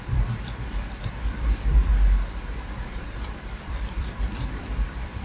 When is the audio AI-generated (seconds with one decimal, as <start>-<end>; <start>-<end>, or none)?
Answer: 0.0-1.9; 3.0-5.2